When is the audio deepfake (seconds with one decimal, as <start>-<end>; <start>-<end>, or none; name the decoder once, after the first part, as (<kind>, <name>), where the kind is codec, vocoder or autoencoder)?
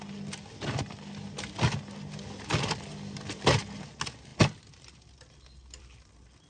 none